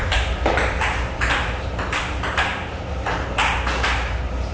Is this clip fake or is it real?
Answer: fake